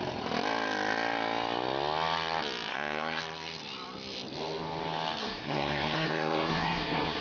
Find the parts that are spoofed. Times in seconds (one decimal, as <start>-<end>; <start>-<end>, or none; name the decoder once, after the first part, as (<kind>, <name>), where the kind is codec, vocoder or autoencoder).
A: 2.7-3.2 (codec, SNAC); 5.2-7.2